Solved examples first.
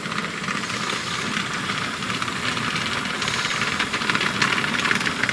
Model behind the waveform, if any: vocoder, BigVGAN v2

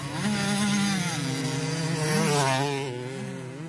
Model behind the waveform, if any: none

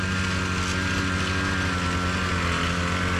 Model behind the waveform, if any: none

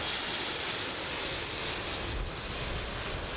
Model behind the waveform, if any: none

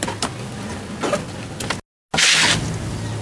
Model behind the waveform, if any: none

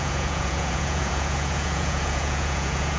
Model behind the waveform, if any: vocoder, Vocos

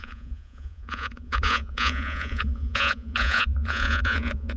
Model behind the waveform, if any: vocoder, Vocos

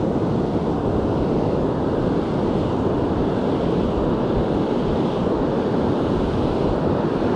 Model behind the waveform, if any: none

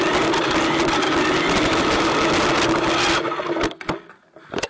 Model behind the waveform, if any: none